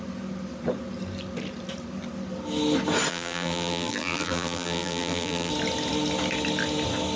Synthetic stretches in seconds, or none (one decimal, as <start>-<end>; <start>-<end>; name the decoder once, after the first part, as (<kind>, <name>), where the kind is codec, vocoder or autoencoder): 3.1-5.5 (vocoder, BigVGAN v2)